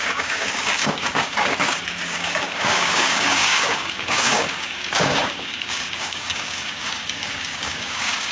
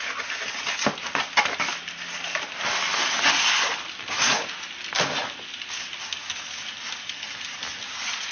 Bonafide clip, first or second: second